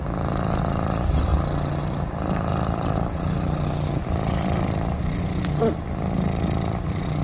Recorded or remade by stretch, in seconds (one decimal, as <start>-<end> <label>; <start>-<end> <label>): 0.0-2.5 recorded; 2.5-4.3 remade; 4.3-7.2 recorded